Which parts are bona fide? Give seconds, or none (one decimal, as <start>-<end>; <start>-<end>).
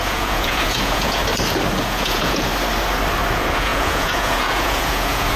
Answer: 1.2-1.8; 2.5-3.3